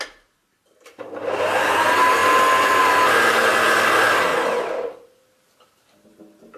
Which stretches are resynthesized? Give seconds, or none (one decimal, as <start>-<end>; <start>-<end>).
none